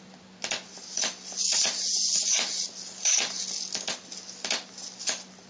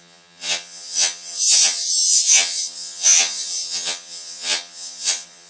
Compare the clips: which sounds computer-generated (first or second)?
second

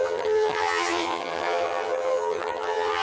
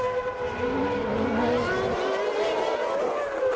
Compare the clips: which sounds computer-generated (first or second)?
first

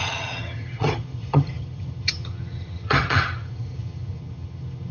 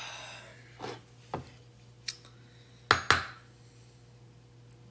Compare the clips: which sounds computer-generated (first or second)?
first